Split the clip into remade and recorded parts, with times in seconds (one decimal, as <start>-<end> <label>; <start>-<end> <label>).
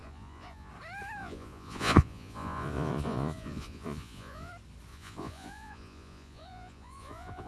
0.0-0.7 remade; 0.7-1.2 recorded; 1.2-4.5 remade; 4.5-4.9 recorded; 4.9-7.5 remade